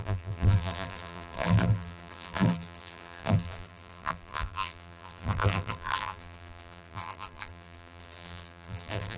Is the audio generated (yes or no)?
yes